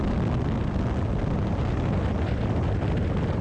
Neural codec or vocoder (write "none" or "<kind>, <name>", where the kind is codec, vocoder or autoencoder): none